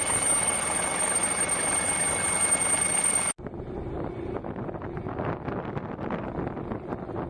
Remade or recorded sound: recorded